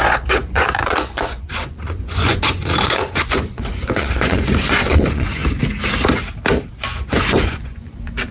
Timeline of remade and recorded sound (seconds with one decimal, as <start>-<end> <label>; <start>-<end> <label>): 0.0-5.4 remade; 5.4-6.7 recorded; 6.7-8.3 remade